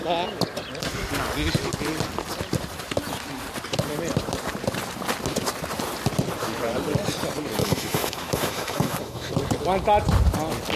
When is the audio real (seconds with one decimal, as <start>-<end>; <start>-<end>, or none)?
0.0-7.6; 9.3-10.8